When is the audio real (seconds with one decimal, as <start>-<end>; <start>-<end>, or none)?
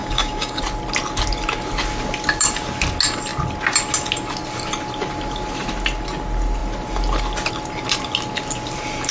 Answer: 0.6-9.1